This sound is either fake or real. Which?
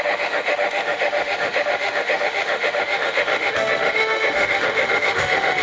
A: fake